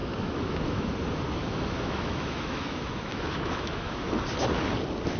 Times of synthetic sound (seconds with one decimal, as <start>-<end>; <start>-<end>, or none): 0.0-0.9; 1.4-4.1